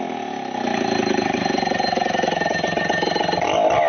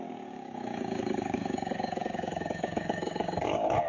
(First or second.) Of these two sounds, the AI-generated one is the second